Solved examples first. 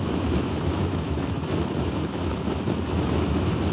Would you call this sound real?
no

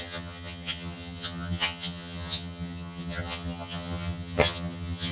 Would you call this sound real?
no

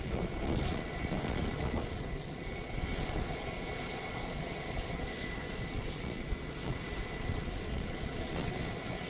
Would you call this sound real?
no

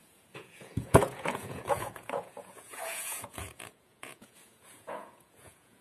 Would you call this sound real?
no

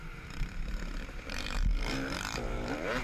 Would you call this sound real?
no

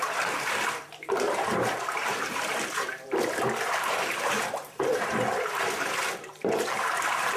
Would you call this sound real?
no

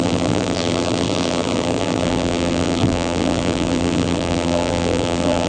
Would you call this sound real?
no